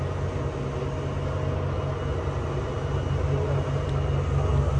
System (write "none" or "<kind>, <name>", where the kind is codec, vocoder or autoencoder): none